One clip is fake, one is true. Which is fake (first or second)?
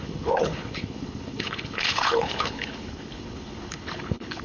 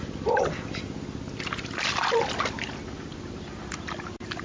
first